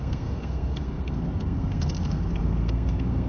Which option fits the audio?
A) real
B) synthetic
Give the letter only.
B